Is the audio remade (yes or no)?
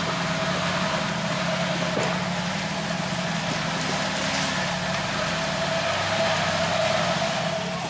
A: no